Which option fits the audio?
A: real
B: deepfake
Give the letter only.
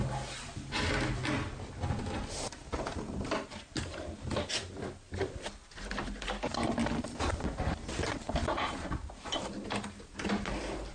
A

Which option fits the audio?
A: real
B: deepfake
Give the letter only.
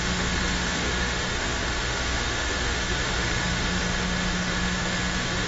B